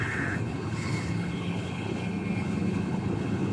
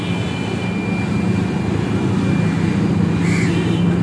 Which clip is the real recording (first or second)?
second